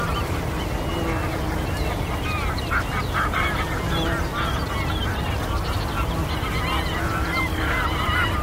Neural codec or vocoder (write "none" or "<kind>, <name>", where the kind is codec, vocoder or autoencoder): none